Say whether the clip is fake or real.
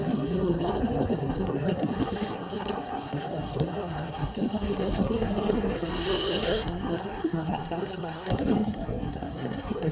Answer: fake